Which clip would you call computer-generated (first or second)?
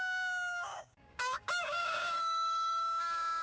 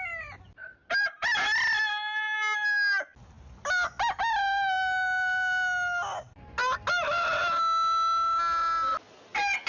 first